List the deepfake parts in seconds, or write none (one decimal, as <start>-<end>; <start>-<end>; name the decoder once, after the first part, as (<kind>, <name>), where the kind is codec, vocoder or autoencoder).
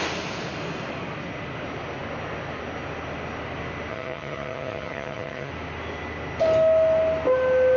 3.9-5.5 (vocoder, HiFi-GAN)